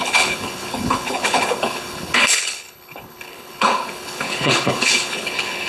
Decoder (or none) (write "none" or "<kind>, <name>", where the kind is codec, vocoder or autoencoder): codec, HILCodec